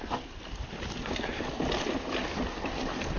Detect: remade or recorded remade